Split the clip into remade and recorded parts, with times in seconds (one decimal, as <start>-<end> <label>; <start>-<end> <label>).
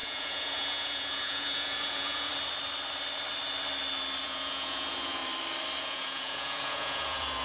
0.0-2.3 remade; 2.3-4.2 recorded; 4.2-5.2 remade; 5.2-5.8 recorded; 5.8-7.4 remade